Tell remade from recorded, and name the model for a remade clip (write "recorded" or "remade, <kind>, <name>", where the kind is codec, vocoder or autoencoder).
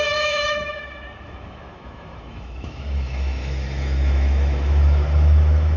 remade, autoencoder, DAC-VAE